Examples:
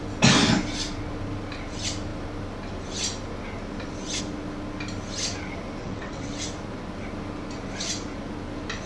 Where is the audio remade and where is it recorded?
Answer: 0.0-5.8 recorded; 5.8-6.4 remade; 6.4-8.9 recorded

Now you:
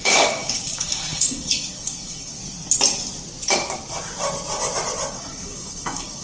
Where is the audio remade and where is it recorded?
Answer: 0.0-2.4 remade; 2.4-5.1 recorded; 5.1-6.2 remade

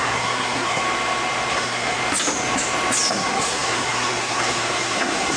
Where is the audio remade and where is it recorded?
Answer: 0.0-0.8 remade; 0.8-1.5 recorded; 1.5-2.0 remade; 2.0-3.1 recorded; 3.1-5.4 remade